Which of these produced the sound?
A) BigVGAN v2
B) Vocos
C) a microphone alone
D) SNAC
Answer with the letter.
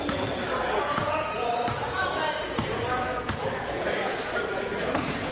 B